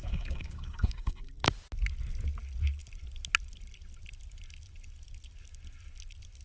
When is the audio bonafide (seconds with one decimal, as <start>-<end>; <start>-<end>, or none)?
1.3-6.4